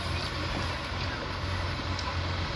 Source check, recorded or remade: recorded